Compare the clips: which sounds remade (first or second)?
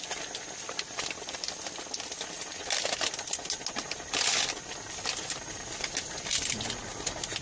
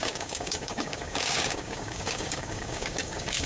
second